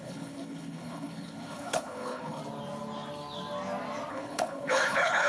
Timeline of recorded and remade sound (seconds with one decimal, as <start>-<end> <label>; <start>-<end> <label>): 0.0-2.4 remade; 2.4-4.1 recorded; 4.1-5.3 remade